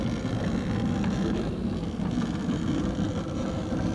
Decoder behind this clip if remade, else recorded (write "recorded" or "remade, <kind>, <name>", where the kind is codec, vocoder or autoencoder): remade, vocoder, BigVGAN v2